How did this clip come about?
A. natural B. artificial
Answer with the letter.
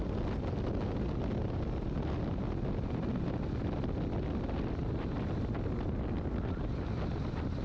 A